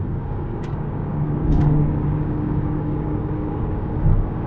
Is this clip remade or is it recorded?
remade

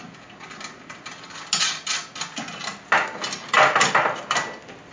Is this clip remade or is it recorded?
recorded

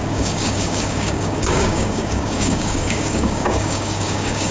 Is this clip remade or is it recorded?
remade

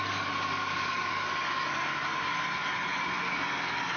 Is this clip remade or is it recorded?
remade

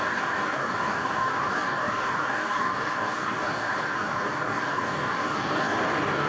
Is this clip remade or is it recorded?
remade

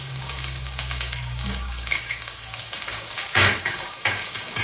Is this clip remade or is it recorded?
remade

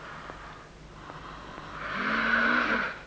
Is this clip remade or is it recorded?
recorded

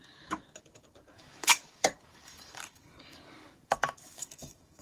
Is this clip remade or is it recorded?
remade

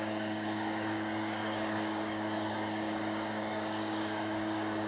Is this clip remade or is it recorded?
remade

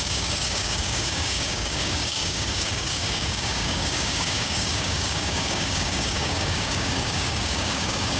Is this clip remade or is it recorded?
remade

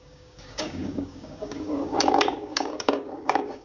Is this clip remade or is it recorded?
remade